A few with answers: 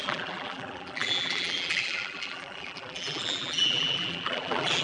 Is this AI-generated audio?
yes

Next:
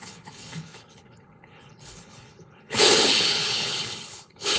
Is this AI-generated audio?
yes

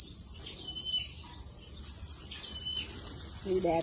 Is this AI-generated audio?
no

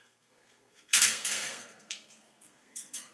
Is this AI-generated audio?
yes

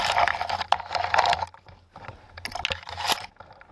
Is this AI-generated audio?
no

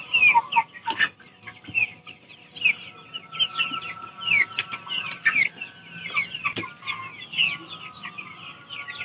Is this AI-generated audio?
no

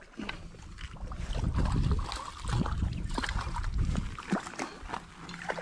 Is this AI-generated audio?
no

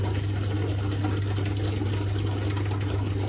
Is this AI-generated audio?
no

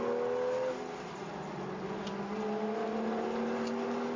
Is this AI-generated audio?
no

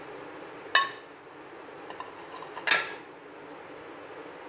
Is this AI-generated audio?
no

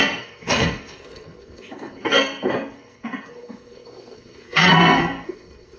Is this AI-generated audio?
yes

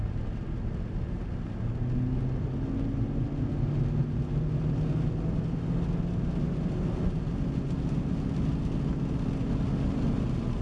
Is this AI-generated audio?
no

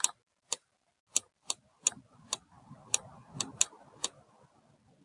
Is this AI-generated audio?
no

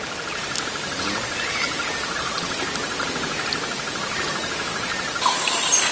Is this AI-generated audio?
no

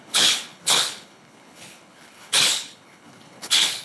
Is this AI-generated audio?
yes